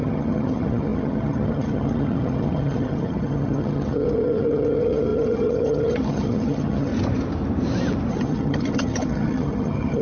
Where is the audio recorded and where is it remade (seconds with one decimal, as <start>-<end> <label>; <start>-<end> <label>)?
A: 0.0-6.9 remade; 6.9-8.1 recorded; 8.1-10.0 remade